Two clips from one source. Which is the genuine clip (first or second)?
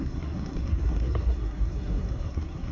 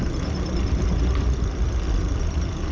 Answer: second